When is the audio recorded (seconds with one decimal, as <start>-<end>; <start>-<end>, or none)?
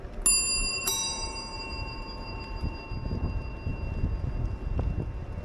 0.0-0.7; 2.8-5.4